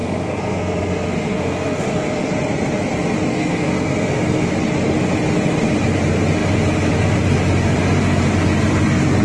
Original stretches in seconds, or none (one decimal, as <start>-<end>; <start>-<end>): 2.3-3.3; 4.5-9.2